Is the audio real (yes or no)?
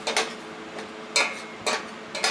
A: yes